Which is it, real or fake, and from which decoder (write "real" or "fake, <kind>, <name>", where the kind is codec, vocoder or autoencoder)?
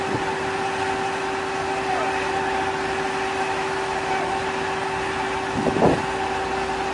real